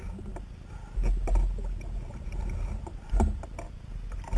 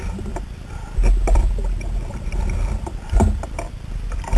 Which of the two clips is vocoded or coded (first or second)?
second